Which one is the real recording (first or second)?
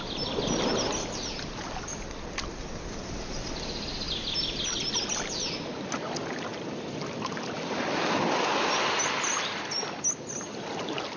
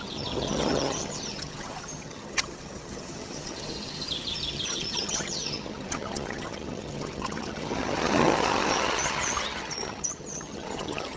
first